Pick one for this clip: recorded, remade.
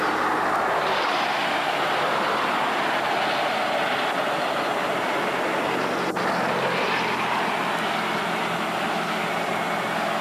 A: recorded